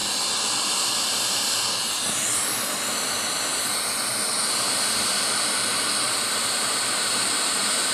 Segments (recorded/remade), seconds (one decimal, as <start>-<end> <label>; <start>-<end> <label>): 0.0-7.9 remade

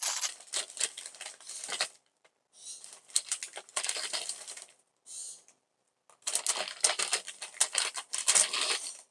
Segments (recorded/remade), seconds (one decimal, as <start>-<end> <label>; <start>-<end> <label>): 0.0-9.1 recorded

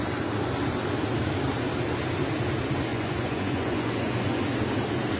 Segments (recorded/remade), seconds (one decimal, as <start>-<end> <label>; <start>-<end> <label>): 0.0-2.9 recorded; 2.9-4.4 remade; 4.4-5.2 recorded